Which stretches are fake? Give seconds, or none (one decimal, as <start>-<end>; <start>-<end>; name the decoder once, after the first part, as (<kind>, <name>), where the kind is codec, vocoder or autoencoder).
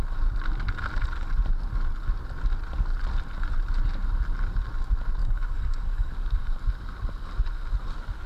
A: 5.2-6.1 (codec, DAC)